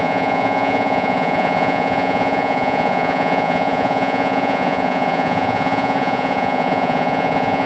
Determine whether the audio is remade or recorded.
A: remade